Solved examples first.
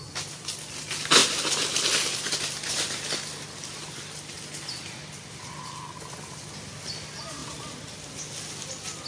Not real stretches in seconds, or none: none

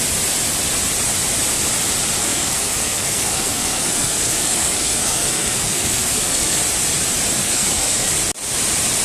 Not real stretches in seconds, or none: 2.2-6.6 (codec, SNAC); 7.4-8.1

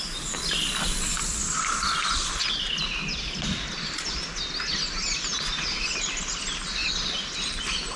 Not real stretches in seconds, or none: none